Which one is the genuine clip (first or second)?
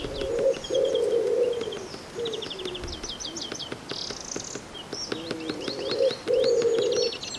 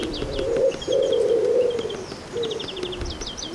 first